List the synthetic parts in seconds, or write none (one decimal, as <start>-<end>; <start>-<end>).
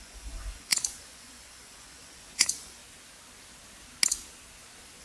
0.0-2.8